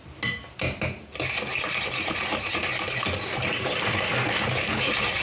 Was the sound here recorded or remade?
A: recorded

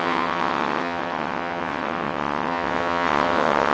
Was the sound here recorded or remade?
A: remade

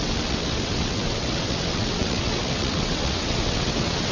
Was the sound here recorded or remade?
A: remade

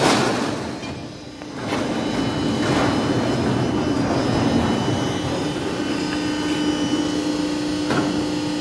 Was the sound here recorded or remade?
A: recorded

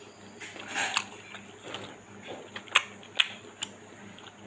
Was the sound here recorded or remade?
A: recorded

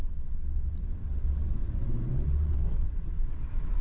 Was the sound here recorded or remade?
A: remade